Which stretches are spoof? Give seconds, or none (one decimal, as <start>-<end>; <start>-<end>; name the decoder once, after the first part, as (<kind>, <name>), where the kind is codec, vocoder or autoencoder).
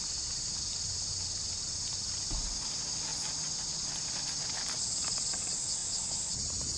none